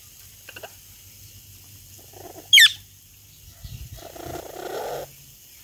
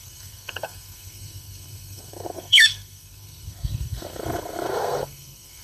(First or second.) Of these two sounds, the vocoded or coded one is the second